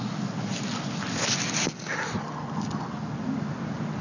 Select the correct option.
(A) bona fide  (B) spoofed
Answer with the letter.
A